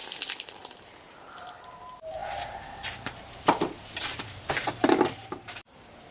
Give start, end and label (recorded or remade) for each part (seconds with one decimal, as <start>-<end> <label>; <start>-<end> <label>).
0.0-1.5 remade; 1.5-2.2 recorded; 2.2-5.5 remade; 5.5-6.1 recorded